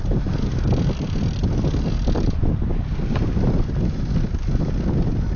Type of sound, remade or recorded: recorded